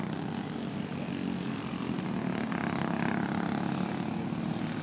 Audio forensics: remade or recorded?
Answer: recorded